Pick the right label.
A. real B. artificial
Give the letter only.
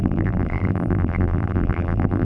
B